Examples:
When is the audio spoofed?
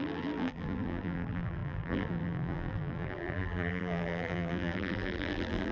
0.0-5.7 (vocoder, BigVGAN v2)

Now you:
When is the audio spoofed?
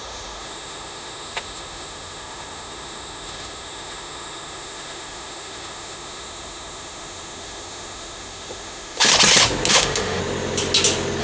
0.0-9.1 (autoencoder, DAC-VAE); 9.7-10.2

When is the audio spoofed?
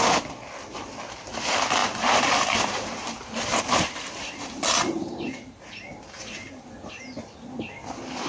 1.8-5.1 (vocoder, BigVGAN v2)